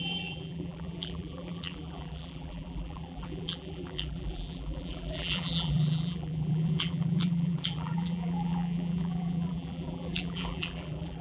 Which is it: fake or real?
fake